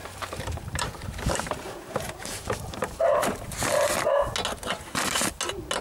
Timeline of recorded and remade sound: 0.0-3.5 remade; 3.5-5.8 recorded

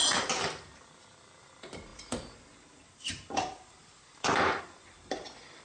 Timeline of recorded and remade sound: 0.0-1.4 recorded; 1.4-5.6 remade

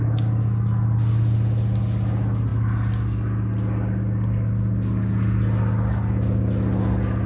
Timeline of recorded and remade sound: 0.0-7.3 recorded

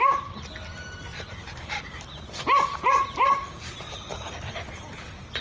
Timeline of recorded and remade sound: 0.0-1.1 recorded; 1.1-4.3 remade; 4.3-5.4 recorded

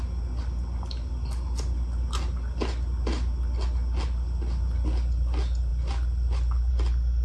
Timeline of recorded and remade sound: 0.0-7.2 recorded